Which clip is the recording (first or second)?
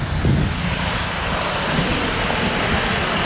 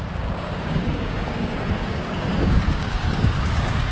first